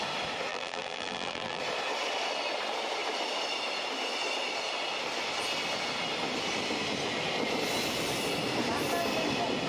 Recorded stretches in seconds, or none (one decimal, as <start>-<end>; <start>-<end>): 0.0-0.5; 1.6-9.7